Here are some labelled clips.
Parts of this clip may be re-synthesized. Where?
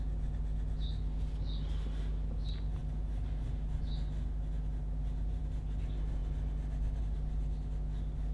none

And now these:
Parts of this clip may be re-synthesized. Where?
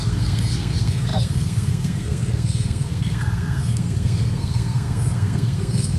0.0-6.0 (codec, SNAC)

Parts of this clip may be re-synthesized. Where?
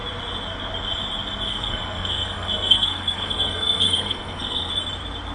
1.5-4.7 (codec, SNAC)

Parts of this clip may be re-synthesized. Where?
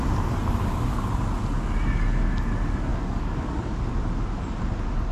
2.9-3.9 (codec, DAC)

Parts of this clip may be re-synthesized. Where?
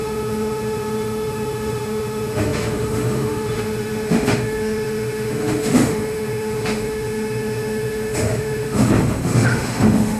0.0-10.2 (autoencoder, DAC-VAE)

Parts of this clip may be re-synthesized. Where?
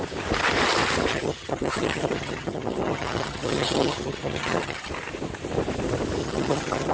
1.1-4.9 (vocoder, HiFi-GAN); 6.2-6.9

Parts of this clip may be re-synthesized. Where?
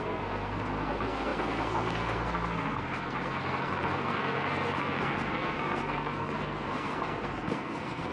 0.0-8.1 (codec, SNAC)